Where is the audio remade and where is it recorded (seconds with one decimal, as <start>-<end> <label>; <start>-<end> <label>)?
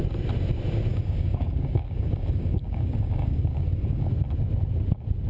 0.0-0.9 recorded; 0.9-4.1 remade; 4.1-5.3 recorded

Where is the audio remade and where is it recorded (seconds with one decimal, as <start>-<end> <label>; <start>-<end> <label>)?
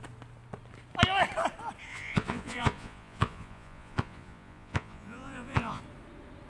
0.0-1.9 recorded; 1.9-5.8 remade; 5.8-6.5 recorded